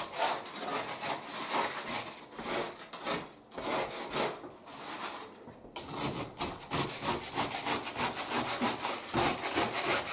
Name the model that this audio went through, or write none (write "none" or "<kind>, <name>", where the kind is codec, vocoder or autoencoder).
none